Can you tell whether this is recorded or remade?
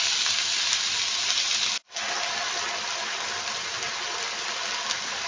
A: recorded